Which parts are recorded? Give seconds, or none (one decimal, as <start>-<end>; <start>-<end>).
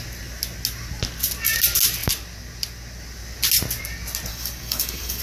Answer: 0.0-4.3